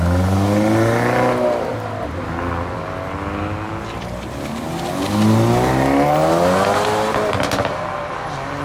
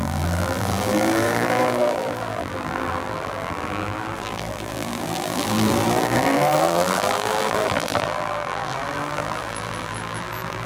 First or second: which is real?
first